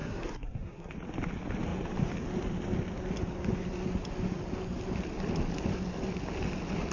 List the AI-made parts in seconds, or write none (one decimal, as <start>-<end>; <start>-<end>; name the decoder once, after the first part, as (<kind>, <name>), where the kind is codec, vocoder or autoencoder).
0.0-0.9 (codec, SNAC)